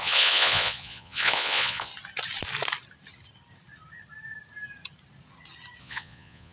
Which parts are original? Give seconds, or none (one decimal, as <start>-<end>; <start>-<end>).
1.9-5.8